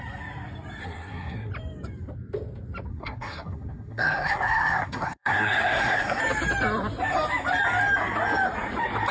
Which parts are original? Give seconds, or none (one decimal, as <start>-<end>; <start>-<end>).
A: 0.0-0.8; 1.5-2.9; 6.2-9.1